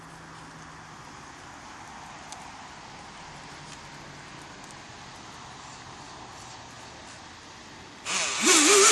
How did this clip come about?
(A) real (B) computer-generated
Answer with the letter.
A